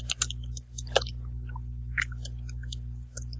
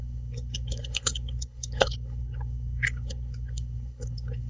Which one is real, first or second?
first